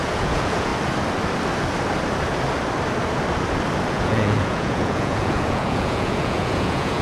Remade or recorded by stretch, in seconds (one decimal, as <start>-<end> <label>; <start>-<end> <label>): 0.0-0.7 remade; 0.7-3.9 recorded; 3.9-7.0 remade